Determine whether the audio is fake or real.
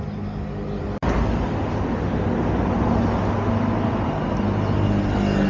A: real